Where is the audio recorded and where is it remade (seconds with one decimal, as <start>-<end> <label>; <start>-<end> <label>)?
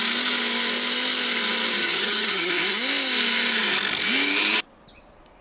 0.0-1.8 recorded; 1.8-2.5 remade; 2.5-5.4 recorded